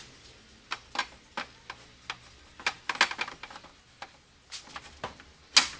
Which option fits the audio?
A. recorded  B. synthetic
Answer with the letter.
A